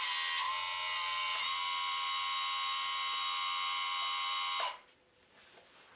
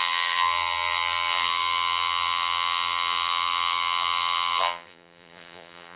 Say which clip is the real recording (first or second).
first